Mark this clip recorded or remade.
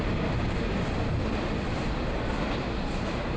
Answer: recorded